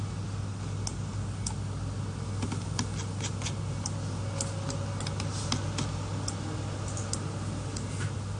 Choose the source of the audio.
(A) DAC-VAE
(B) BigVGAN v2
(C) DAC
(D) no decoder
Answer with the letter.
D